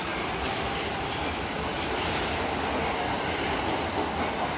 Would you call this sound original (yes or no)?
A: yes